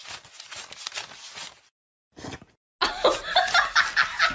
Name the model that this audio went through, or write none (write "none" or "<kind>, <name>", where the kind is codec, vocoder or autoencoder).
none